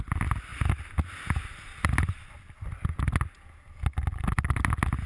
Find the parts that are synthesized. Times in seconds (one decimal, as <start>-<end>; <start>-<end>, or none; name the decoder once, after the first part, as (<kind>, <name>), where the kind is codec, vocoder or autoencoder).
none